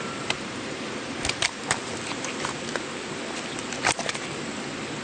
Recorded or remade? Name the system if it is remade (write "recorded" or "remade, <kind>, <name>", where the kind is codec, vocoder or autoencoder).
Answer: recorded